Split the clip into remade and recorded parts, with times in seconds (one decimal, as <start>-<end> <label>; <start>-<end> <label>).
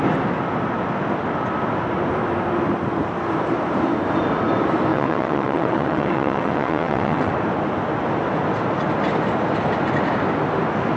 0.0-4.9 recorded; 4.9-7.3 remade; 7.3-11.0 recorded